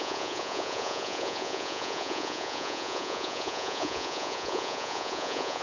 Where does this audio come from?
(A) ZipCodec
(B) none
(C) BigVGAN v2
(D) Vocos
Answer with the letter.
D